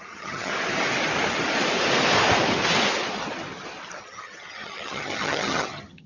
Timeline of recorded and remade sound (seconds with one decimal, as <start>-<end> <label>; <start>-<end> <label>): 0.0-0.5 remade; 0.5-4.0 recorded; 4.0-6.1 remade